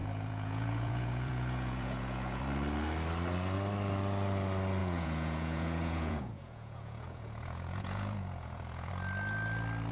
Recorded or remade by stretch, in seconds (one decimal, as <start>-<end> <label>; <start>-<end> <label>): 0.0-2.4 remade; 2.4-4.8 recorded; 4.8-8.9 remade; 8.9-9.9 recorded